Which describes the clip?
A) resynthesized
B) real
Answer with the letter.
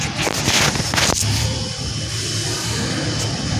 B